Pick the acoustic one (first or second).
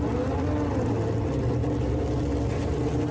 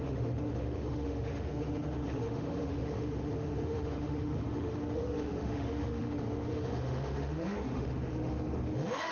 first